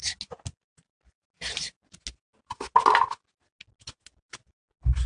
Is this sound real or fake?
real